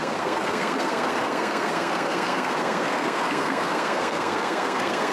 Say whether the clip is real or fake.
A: fake